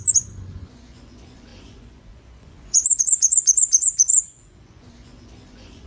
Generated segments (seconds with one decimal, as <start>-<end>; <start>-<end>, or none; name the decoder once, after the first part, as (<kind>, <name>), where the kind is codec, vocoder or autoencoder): 0.0-5.9 (vocoder, Vocos)